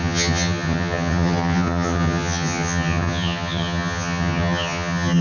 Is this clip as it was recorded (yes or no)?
no